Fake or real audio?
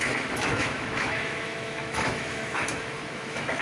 fake